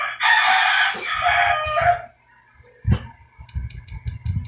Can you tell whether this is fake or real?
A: real